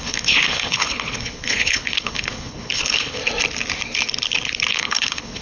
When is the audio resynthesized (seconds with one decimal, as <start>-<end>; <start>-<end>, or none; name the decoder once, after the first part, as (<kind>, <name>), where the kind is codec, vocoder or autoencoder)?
0.0-3.2 (codec, HILCodec); 4.7-5.4